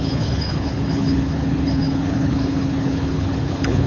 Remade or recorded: remade